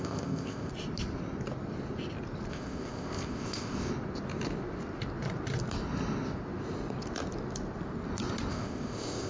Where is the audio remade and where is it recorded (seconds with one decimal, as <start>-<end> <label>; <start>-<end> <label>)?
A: 0.0-0.7 remade; 0.7-2.5 recorded; 2.5-3.9 remade; 3.9-8.5 recorded; 8.5-9.3 remade